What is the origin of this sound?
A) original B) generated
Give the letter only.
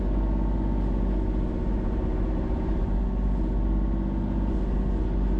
A